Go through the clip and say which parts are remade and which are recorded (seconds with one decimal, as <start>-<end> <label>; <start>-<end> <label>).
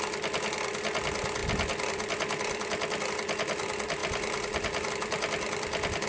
0.0-4.0 recorded; 4.0-4.9 remade; 4.9-6.1 recorded